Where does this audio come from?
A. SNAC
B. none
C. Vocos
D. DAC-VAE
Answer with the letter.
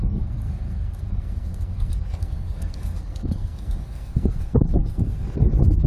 A